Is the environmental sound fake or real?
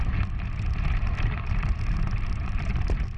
fake